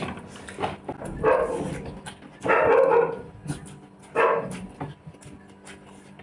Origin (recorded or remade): recorded